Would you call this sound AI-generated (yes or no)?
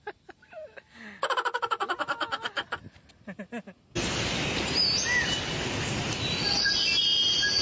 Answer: no